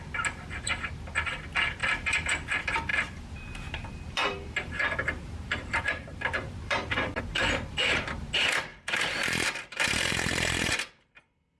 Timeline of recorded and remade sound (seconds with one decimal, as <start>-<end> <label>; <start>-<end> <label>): 0.0-1.8 recorded; 1.8-2.3 remade; 2.3-2.9 recorded; 2.9-7.2 remade; 7.2-8.7 recorded; 8.7-10.9 remade; 10.9-11.6 recorded